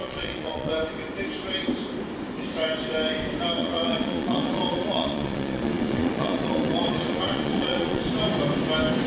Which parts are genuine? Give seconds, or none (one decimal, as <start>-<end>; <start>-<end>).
0.7-3.6; 8.0-9.1